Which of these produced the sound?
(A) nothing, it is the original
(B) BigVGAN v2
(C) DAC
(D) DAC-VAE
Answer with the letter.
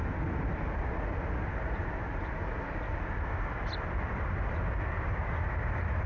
A